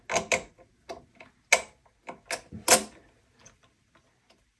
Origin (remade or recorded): recorded